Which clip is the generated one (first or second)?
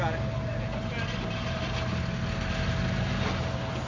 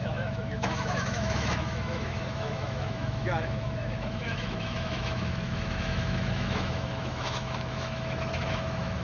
second